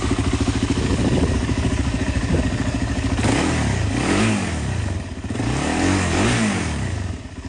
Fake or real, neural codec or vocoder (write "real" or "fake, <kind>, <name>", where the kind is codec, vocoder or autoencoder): fake, codec, DAC